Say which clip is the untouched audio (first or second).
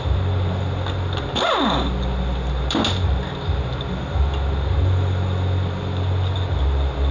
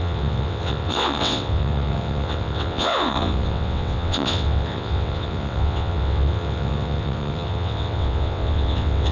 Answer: first